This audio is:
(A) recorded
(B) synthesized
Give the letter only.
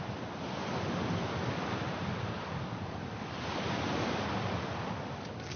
A